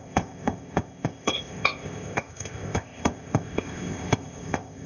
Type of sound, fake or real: fake